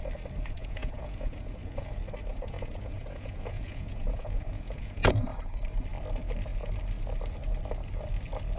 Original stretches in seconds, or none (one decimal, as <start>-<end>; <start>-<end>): 0.0-0.6; 1.9-2.3; 5.6-8.6